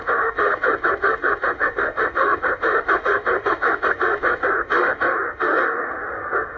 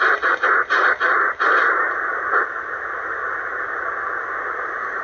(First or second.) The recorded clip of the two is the second